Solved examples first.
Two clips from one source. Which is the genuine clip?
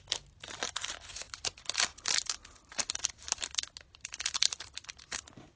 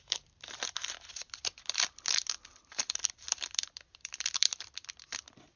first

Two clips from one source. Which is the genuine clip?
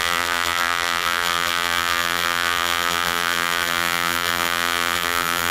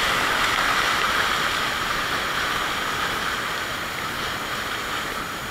second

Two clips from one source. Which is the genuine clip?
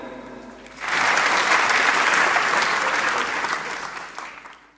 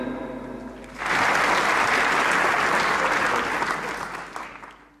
second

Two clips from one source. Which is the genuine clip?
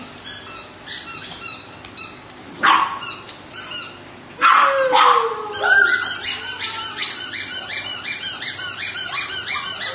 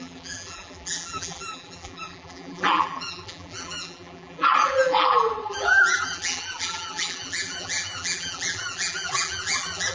first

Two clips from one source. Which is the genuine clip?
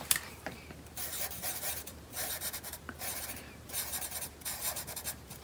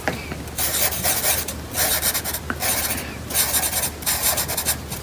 second